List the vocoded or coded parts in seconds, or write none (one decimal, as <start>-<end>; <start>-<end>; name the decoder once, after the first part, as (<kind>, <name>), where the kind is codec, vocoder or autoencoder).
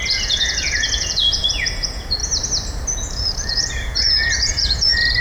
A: 0.0-2.2 (vocoder, Vocos); 2.9-5.2